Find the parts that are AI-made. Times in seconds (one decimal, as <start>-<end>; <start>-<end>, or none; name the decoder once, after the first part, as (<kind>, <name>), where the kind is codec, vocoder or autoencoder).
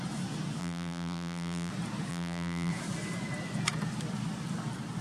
0.6-1.7 (vocoder, BigVGAN v2); 2.1-2.7